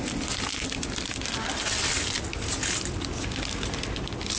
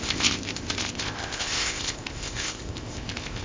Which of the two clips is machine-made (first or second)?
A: second